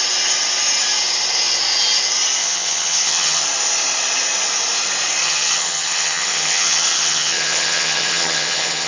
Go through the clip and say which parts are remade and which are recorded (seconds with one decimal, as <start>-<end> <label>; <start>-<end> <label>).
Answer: 0.0-2.4 recorded; 2.4-3.4 remade; 3.4-5.2 recorded; 5.2-8.9 remade